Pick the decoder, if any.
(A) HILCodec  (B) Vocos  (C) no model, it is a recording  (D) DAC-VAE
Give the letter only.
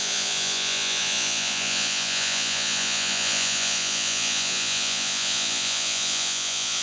B